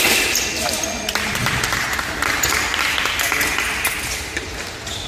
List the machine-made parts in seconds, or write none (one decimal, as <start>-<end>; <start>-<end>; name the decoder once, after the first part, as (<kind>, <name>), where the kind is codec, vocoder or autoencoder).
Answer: none